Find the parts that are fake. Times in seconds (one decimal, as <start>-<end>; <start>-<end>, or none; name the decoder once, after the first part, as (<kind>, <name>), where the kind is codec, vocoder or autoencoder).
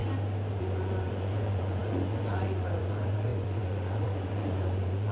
0.6-5.1 (vocoder, Vocos)